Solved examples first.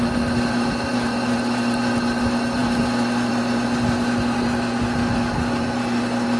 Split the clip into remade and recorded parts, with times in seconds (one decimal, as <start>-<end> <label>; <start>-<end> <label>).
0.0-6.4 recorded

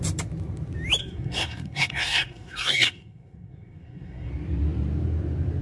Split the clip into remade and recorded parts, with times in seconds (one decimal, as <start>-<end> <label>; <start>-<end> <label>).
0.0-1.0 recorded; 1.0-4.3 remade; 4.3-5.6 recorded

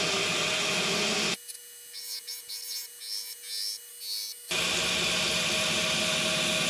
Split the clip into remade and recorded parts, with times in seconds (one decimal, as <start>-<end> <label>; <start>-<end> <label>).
0.0-6.7 recorded

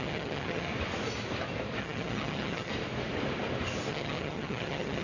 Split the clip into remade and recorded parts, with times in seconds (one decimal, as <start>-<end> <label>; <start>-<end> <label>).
0.0-0.7 remade; 0.7-1.8 recorded; 1.8-2.7 remade; 2.7-3.9 recorded; 3.9-5.0 remade

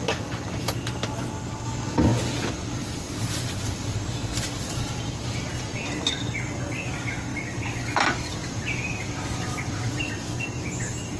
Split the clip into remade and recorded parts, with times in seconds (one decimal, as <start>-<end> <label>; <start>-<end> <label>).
0.0-2.1 recorded; 2.1-5.4 remade; 5.4-11.2 recorded